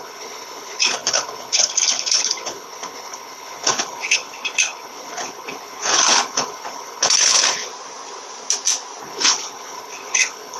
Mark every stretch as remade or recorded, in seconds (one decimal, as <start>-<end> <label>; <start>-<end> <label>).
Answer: 0.0-7.7 remade; 7.7-9.0 recorded; 9.0-10.6 remade